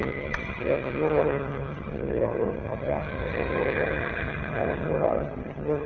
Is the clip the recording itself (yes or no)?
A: no